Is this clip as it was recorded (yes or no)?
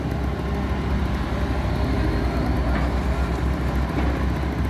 yes